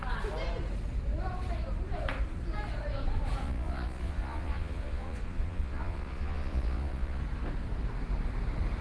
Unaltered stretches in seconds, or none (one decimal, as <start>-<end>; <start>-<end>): 0.0-3.4; 7.2-8.8